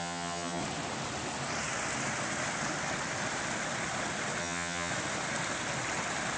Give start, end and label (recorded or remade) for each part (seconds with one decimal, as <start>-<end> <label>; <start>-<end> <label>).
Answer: 0.0-0.6 remade; 0.6-4.4 recorded; 4.4-4.9 remade; 4.9-6.4 recorded